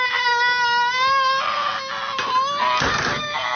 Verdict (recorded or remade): recorded